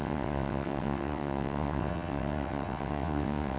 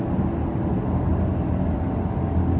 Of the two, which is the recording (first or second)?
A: second